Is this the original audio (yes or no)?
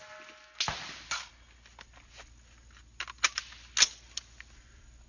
yes